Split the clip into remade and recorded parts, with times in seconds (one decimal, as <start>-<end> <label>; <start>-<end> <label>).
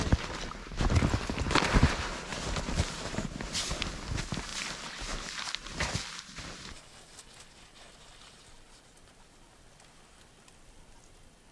0.0-11.5 recorded